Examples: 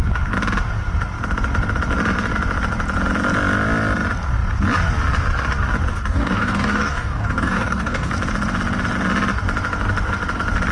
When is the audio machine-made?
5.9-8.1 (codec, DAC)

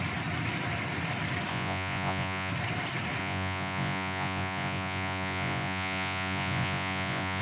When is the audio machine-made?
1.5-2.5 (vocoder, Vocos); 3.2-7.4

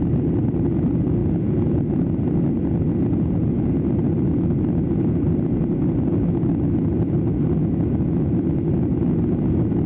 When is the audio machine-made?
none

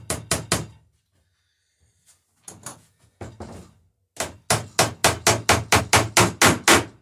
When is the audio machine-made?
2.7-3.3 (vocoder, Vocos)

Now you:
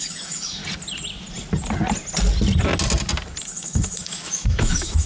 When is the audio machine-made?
0.0-0.6 (autoencoder, DAC-VAE); 3.4-5.1

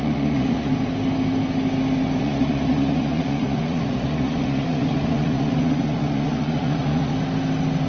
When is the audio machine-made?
0.0-0.7 (vocoder, Vocos); 2.2-7.1

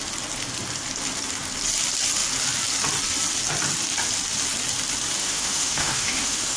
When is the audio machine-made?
5.2-6.6 (autoencoder, DAC-VAE)